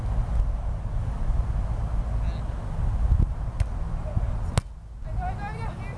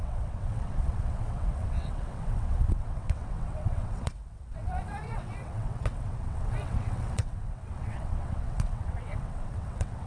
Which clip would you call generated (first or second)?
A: second